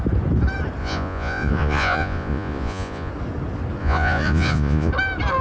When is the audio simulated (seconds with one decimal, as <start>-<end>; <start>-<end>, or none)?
0.8-3.1; 3.8-4.9